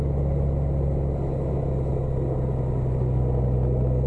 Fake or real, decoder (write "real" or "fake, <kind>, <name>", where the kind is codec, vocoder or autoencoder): real